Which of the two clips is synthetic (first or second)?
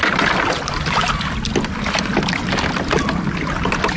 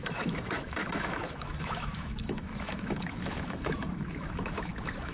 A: second